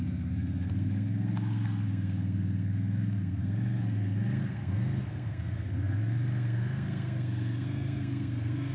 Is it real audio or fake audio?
fake